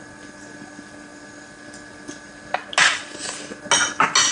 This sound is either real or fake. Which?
real